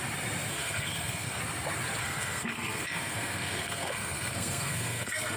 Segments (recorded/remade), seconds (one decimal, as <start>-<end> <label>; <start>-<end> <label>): 0.0-0.5 recorded; 0.5-1.4 remade; 1.4-2.0 recorded; 2.0-5.4 remade